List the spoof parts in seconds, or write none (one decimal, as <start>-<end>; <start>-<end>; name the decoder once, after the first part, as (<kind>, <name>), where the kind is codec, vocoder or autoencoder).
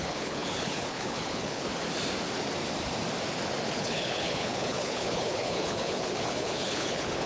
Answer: 0.0-1.7 (codec, HILCodec); 3.7-7.3